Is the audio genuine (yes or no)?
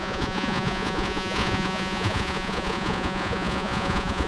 no